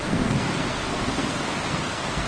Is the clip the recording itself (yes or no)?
no